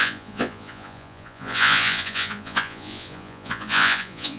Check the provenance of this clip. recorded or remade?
remade